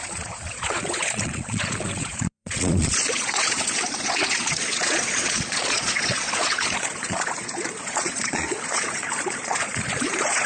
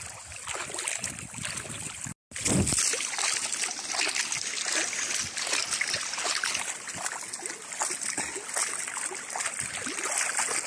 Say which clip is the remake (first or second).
first